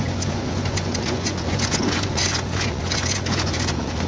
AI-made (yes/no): yes